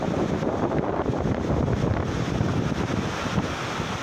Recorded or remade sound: recorded